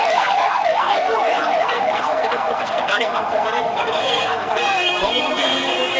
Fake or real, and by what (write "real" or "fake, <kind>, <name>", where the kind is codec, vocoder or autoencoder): fake, codec, SNAC